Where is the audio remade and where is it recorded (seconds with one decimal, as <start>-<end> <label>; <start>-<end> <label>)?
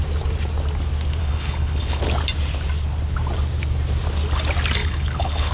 0.0-1.2 recorded; 1.2-2.0 remade; 2.0-4.8 recorded; 4.8-5.5 remade